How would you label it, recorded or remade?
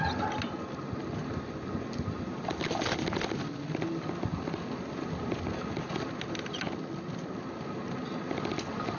recorded